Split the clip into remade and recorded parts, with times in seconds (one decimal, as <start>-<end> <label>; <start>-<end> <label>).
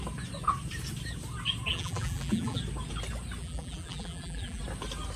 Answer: 0.0-1.7 recorded; 1.7-2.6 remade; 2.6-3.4 recorded; 3.4-4.6 remade; 4.6-5.2 recorded